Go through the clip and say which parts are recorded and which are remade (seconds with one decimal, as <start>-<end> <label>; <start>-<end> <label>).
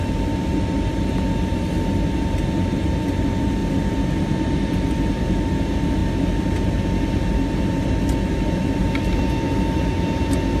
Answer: 0.0-10.6 recorded